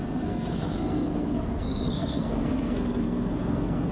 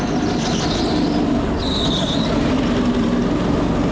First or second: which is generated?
first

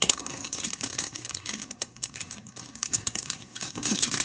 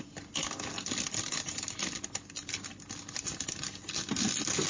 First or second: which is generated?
first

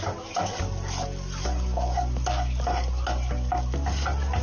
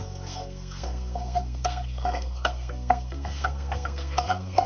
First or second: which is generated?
second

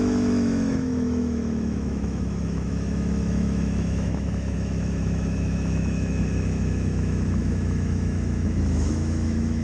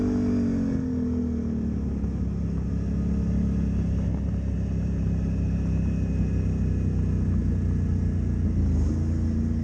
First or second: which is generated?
first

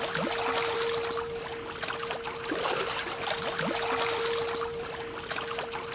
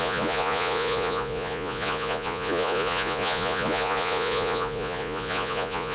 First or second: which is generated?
second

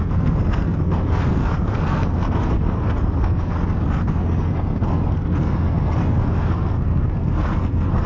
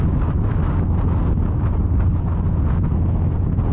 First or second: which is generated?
first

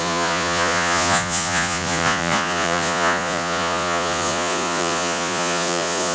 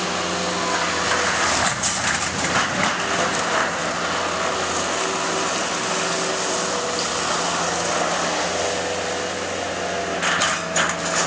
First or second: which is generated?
first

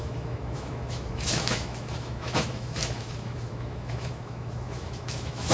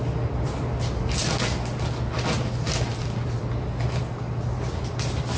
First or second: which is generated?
first